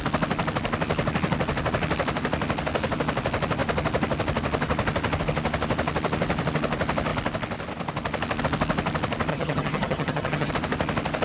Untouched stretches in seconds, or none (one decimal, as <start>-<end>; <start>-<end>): 0.0-9.3; 10.5-11.2